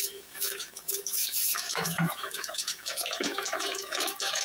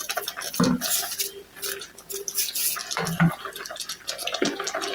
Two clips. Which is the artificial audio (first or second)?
first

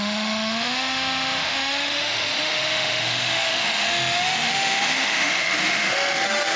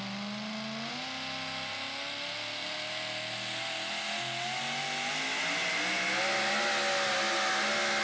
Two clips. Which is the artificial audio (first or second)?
first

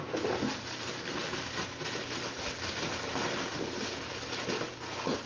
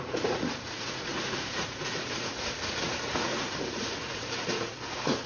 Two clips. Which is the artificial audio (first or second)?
second